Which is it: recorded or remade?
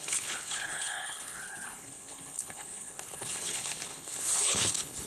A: remade